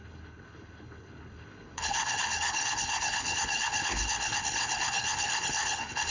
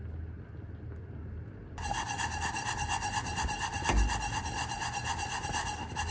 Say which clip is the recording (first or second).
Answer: second